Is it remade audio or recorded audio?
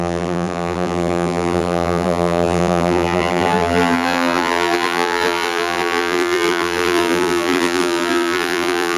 remade